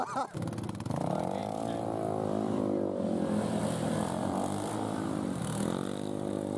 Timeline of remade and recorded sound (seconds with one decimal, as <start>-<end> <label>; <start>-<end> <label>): 0.0-1.4 recorded; 1.4-5.4 remade; 5.4-6.6 recorded